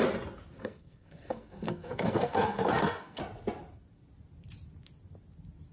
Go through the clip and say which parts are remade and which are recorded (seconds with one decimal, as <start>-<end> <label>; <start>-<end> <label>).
0.0-0.6 recorded; 0.6-3.2 remade; 3.2-5.7 recorded